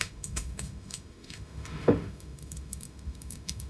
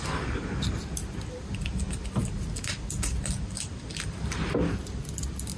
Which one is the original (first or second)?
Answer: second